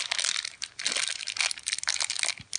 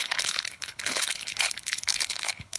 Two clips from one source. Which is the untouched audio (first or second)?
first